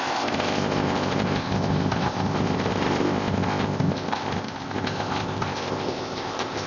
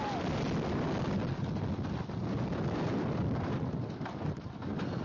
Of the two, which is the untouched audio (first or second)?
second